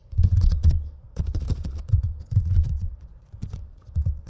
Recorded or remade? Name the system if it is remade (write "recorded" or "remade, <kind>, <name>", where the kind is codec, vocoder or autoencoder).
remade, vocoder, Vocos